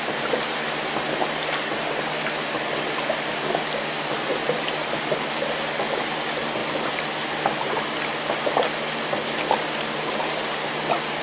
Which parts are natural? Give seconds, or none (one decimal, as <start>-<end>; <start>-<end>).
0.0-11.2